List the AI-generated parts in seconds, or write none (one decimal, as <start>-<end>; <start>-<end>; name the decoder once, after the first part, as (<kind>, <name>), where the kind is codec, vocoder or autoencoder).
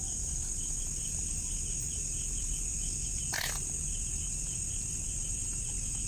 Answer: none